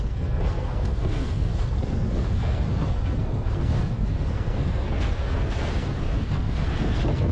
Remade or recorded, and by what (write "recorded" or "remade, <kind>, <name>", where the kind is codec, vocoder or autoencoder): remade, codec, SNAC